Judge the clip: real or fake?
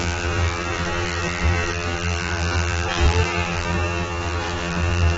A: fake